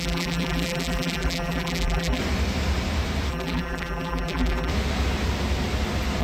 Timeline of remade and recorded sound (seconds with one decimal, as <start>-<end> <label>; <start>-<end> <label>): 0.0-2.2 remade; 2.2-3.3 recorded; 3.3-4.7 remade; 4.7-6.2 recorded

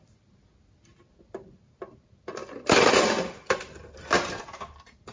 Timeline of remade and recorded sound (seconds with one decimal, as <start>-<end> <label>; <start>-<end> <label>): 0.0-5.1 recorded